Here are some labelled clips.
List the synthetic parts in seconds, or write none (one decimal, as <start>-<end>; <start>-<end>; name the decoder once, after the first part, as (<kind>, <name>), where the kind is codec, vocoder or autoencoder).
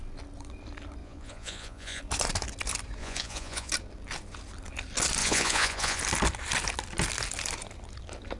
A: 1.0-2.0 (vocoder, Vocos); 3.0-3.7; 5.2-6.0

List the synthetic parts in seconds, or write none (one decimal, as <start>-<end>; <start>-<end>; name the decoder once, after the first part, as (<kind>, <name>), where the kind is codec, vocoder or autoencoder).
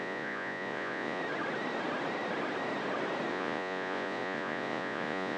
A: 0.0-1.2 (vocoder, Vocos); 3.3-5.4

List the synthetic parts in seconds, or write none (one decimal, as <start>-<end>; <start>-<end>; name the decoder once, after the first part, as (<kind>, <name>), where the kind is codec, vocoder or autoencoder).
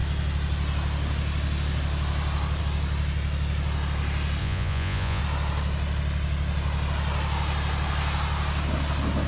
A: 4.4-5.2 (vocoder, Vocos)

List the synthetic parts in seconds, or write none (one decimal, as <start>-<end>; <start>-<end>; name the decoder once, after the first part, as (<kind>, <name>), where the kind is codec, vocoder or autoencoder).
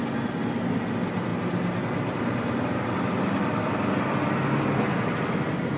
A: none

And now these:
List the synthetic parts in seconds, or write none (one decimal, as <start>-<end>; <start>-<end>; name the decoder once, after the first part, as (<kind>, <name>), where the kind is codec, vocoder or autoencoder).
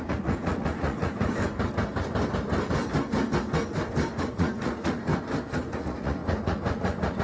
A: 0.0-1.4 (vocoder, Vocos); 4.2-5.1; 5.8-7.2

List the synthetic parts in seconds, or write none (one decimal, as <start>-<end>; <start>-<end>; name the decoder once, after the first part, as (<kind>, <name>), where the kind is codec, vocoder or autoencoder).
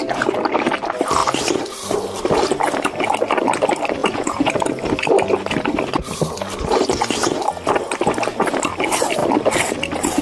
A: 4.0-4.5 (vocoder, Vocos)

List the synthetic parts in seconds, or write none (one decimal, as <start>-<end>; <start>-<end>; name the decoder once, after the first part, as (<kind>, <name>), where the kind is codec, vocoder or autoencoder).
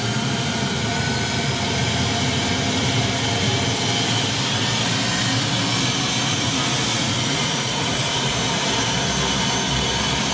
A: 6.2-8.4 (vocoder, Vocos)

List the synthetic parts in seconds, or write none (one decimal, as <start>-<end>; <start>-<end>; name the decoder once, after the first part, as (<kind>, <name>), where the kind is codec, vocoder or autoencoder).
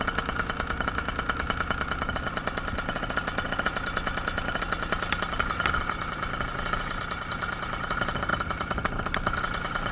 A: none